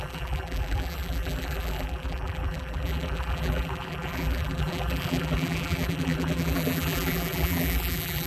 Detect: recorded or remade remade